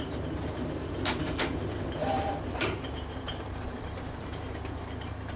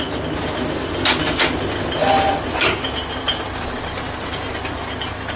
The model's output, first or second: first